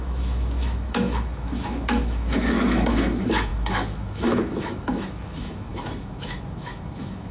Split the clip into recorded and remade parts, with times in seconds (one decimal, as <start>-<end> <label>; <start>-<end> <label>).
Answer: 0.0-7.3 remade